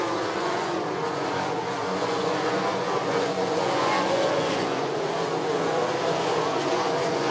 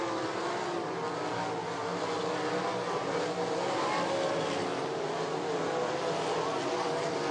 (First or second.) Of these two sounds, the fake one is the first